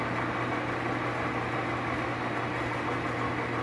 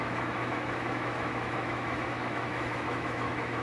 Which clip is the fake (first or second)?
second